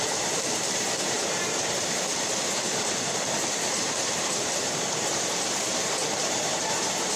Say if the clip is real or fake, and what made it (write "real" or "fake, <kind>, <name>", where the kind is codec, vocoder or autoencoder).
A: fake, vocoder, BigVGAN v2